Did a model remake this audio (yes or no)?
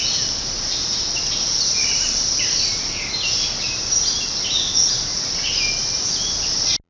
no